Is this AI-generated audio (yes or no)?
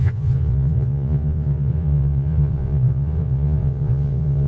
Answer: yes